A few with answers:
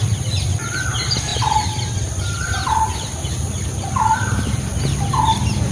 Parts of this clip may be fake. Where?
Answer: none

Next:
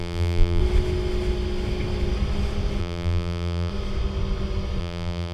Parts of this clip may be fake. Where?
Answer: 0.0-0.6 (vocoder, BigVGAN v2); 2.8-3.7; 4.8-5.3

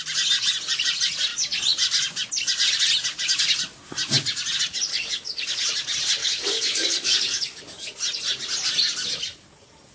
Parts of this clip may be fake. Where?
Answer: 4.9-5.6 (codec, DAC); 6.2-7.9